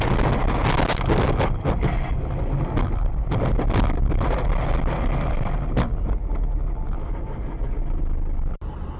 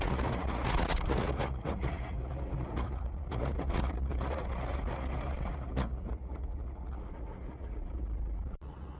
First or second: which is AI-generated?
second